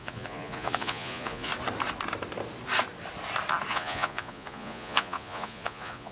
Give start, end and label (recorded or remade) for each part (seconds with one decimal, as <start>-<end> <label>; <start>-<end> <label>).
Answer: 0.0-1.5 remade; 1.5-3.7 recorded; 3.7-6.1 remade